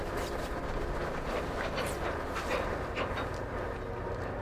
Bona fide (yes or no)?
yes